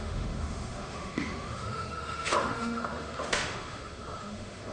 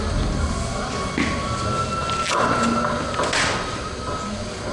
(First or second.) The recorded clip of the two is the second